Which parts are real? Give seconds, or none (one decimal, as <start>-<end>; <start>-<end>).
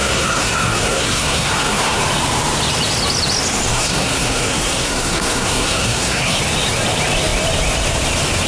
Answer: 2.0-3.7; 6.4-8.5